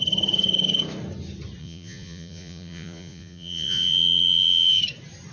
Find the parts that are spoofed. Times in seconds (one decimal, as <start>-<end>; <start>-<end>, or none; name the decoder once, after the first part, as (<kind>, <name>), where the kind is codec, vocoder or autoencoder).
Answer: 1.6-4.8 (vocoder, Vocos)